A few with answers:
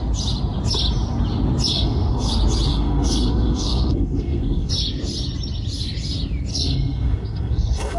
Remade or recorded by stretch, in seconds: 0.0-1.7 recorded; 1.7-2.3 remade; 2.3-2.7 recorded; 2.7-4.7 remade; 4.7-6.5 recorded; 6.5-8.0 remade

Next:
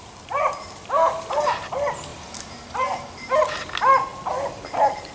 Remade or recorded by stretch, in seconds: 0.0-5.1 recorded

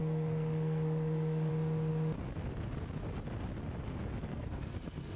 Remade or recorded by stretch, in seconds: 0.0-1.5 remade; 1.5-4.3 recorded; 4.3-5.2 remade

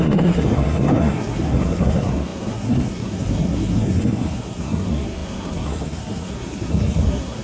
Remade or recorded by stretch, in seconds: 0.0-7.4 remade